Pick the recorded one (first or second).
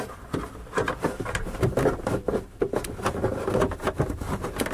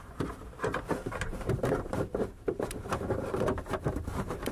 first